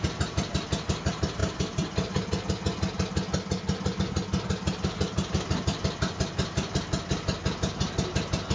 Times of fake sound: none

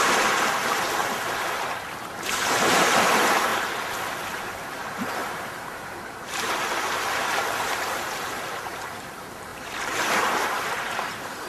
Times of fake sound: 0.0-1.0 (vocoder, BigVGAN v2); 2.3-3.5; 4.3-11.5